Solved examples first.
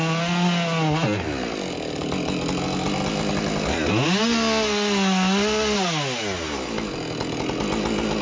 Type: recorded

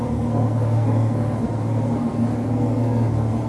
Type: remade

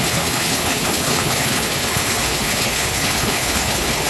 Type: remade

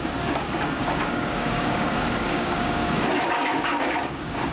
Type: remade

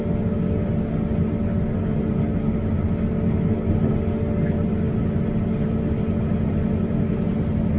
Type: recorded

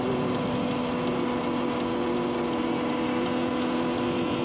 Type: recorded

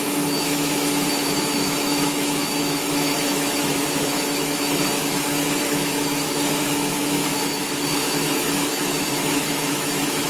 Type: remade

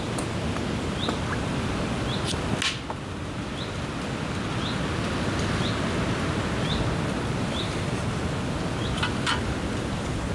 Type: recorded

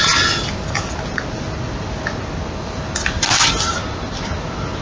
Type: recorded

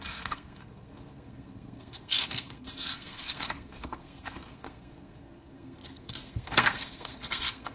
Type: remade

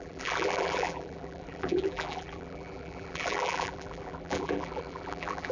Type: remade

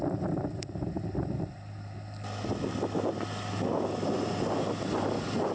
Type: recorded